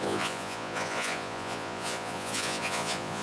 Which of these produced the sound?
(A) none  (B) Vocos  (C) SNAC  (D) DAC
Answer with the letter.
B